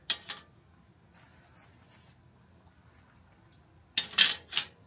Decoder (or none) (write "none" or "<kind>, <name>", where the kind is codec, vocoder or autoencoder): none